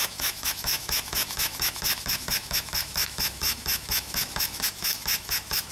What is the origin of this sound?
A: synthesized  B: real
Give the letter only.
A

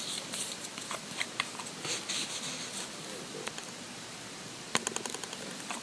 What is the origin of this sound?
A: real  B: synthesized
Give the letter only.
A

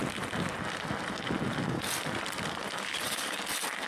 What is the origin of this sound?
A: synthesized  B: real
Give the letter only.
B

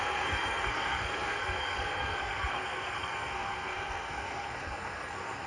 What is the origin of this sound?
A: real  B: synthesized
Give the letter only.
B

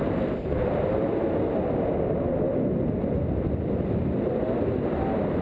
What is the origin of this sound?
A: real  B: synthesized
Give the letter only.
A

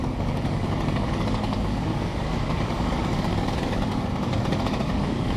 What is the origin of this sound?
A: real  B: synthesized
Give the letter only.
B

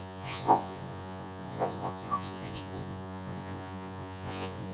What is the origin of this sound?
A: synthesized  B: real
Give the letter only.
A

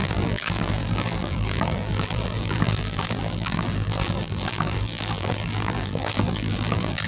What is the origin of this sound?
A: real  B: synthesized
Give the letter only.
B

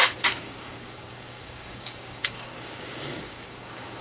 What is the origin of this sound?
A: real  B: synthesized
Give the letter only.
B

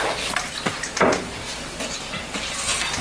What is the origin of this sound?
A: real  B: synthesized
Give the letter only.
A